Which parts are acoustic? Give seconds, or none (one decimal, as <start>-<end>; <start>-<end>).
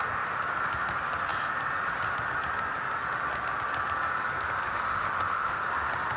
0.0-4.7; 5.6-6.2